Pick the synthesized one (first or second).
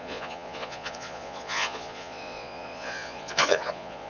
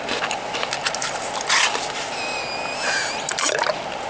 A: first